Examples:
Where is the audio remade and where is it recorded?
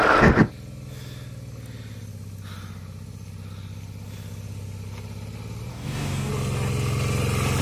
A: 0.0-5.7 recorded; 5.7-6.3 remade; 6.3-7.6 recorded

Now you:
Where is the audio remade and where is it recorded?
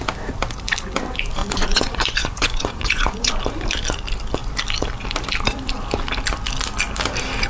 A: 0.0-1.4 recorded; 1.4-3.3 remade; 3.3-7.5 recorded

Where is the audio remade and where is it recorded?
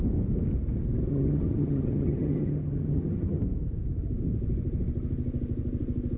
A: 0.0-1.1 recorded; 1.1-3.4 remade; 3.4-6.2 recorded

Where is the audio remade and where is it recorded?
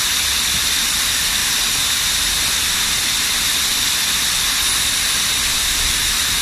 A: 0.0-6.4 recorded